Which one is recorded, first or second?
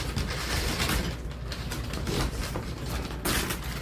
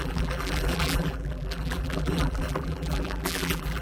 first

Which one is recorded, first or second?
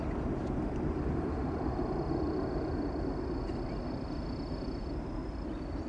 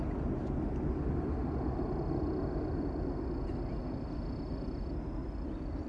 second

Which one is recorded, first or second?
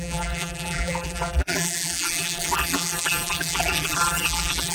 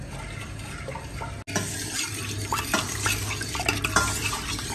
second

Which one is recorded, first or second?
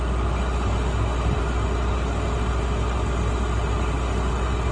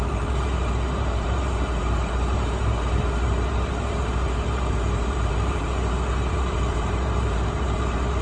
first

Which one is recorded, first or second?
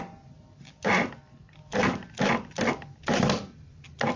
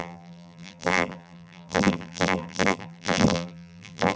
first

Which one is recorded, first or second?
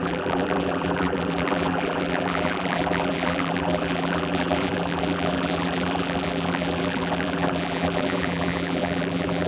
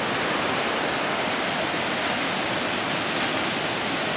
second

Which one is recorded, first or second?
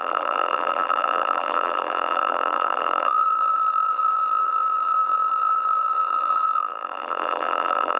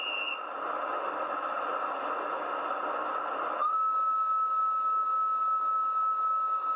second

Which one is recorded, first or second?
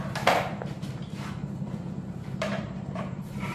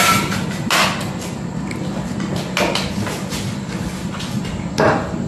second